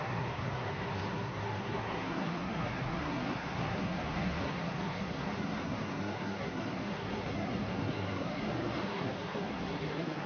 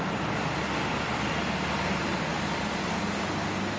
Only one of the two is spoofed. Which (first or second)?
first